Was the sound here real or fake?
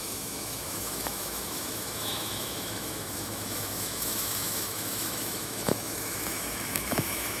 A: fake